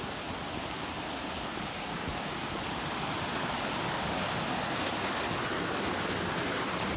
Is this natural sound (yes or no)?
yes